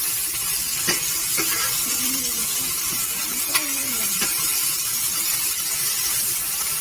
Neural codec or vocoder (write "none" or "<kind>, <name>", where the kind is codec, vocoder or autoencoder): vocoder, BigVGAN v2